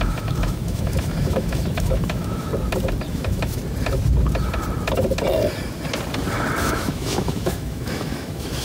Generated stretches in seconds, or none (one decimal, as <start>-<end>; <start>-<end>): 0.0-2.5; 3.1-3.6; 6.6-8.6